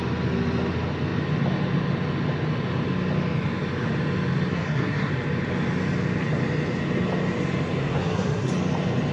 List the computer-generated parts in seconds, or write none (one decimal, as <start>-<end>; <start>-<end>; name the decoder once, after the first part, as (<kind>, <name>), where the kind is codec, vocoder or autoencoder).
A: 4.5-5.1 (codec, SNAC); 7.8-8.5